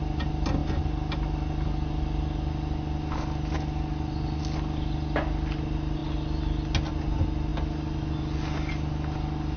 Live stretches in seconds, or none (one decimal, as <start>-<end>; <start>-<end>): 0.0-9.6